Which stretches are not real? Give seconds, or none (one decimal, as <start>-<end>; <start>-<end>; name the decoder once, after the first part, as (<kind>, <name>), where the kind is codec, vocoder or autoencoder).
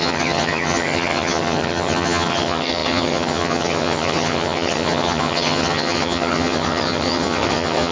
0.0-7.9 (vocoder, HiFi-GAN)